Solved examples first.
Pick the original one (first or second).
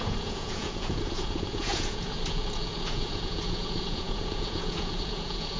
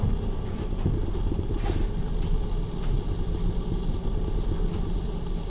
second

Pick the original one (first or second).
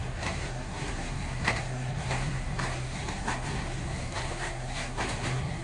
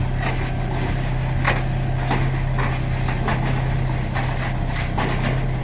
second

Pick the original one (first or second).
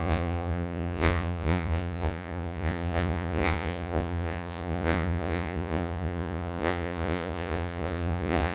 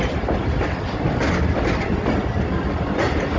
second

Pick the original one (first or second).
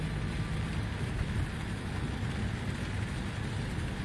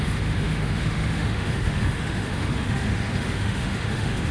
first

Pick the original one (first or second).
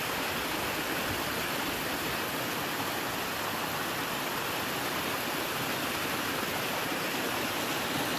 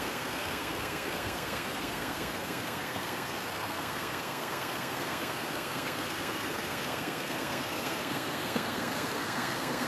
first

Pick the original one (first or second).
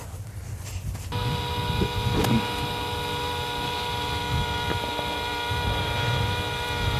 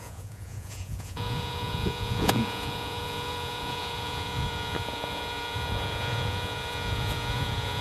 first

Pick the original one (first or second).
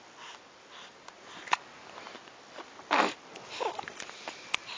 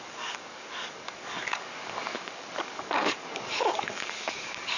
first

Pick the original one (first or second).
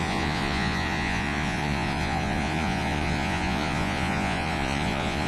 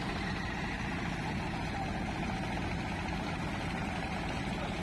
second